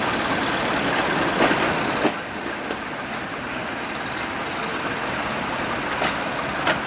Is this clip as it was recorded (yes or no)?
yes